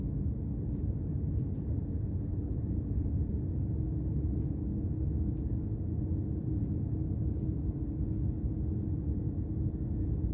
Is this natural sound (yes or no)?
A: yes